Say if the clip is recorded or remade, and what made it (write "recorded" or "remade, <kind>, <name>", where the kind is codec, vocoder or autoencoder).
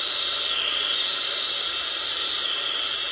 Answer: recorded